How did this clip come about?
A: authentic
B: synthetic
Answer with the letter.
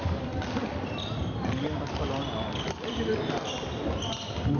A